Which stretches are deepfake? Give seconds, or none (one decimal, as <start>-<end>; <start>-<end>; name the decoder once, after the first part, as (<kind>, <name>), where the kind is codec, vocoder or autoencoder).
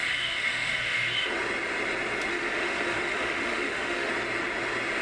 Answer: 0.0-1.3 (autoencoder, DAC-VAE); 2.3-4.1